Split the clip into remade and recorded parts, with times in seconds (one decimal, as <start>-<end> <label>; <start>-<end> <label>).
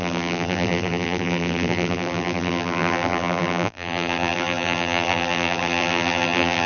0.0-6.7 remade